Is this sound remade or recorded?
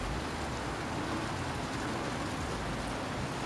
recorded